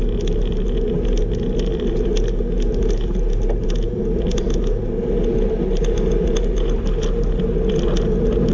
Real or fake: real